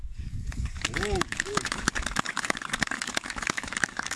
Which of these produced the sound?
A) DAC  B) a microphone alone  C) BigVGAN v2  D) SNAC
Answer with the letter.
A